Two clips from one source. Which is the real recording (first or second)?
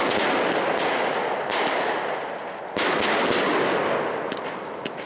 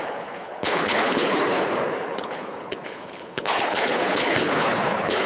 first